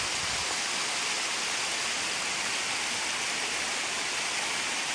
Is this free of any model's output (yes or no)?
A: yes